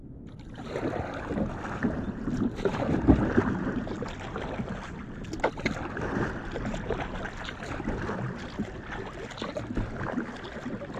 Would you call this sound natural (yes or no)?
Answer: yes